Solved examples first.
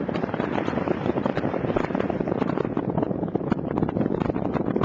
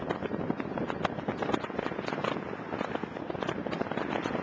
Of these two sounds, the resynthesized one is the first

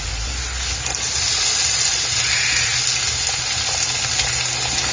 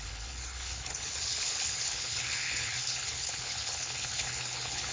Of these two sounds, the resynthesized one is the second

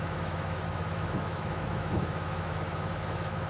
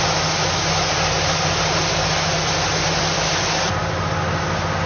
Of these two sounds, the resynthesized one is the first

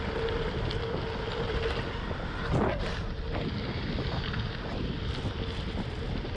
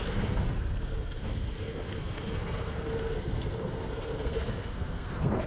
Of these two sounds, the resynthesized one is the second